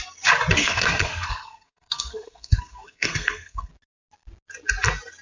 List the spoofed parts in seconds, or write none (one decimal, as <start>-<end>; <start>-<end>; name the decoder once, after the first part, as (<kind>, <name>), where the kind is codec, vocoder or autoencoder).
0.6-3.7 (codec, SNAC)